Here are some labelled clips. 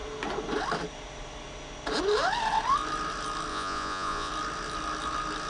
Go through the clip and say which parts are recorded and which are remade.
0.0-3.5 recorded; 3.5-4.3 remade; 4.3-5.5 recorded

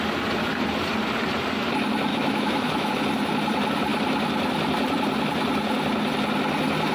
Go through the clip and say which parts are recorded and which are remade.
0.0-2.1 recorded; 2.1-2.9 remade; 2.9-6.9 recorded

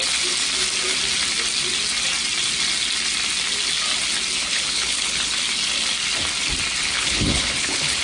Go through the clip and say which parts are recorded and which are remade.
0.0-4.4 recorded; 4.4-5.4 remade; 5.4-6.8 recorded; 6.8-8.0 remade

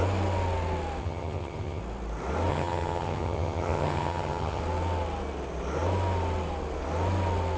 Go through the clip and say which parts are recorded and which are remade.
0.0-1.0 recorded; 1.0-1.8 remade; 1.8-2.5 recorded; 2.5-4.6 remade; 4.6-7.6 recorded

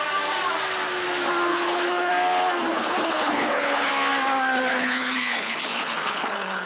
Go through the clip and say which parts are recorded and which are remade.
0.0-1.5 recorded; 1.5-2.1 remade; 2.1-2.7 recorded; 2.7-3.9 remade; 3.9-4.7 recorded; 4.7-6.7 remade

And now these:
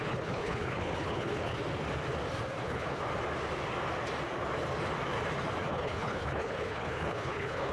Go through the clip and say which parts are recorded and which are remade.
0.0-1.6 remade; 1.6-2.6 recorded; 2.6-3.0 remade; 3.0-5.7 recorded; 5.7-7.7 remade